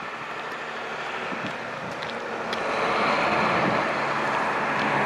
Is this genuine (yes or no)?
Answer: yes